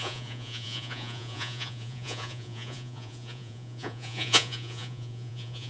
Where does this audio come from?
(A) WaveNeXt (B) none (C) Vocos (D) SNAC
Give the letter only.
C